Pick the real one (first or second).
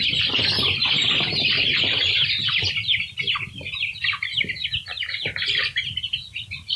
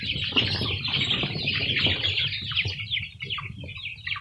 second